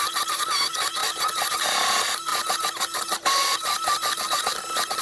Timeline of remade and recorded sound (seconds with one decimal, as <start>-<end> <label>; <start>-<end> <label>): 0.0-5.0 recorded